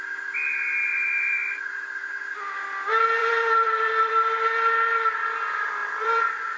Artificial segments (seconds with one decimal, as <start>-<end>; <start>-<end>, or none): 0.9-2.1; 3.2-4.1; 5.8-6.6